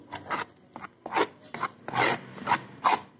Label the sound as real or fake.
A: real